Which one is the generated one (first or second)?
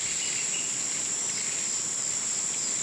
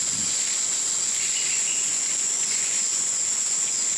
second